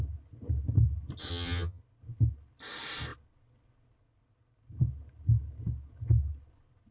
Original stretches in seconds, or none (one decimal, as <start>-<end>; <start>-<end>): 0.0-1.3; 1.8-6.9